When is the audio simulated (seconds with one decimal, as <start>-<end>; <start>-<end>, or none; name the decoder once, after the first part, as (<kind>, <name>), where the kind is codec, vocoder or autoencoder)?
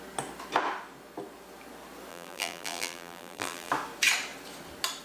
2.1-3.7 (vocoder, BigVGAN v2)